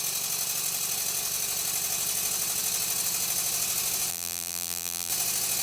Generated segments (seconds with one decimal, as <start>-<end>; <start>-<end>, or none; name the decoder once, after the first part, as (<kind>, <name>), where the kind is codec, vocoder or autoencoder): 4.1-5.1 (vocoder, BigVGAN v2)